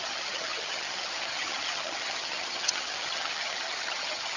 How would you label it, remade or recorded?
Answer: remade